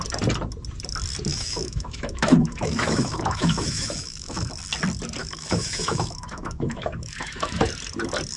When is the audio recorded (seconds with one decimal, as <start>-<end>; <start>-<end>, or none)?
0.0-1.3; 4.5-5.2; 7.7-8.4